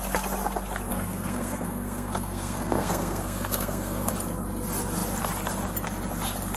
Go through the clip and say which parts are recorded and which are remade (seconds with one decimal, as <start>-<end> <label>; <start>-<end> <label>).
0.0-0.9 recorded; 0.9-4.1 remade; 4.1-6.6 recorded